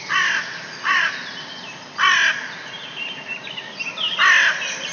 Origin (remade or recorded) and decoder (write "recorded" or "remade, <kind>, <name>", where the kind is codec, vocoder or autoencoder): recorded